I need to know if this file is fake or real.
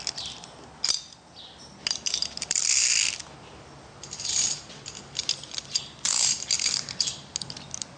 real